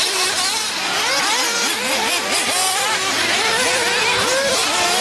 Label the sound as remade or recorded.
recorded